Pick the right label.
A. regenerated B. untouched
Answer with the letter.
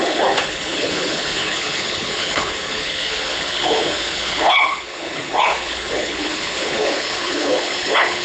A